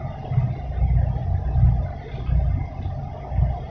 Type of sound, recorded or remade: recorded